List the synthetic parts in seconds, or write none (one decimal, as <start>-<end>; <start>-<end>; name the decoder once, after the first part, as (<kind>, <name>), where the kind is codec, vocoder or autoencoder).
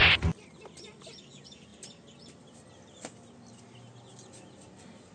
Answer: none